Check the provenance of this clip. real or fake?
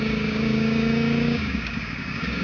fake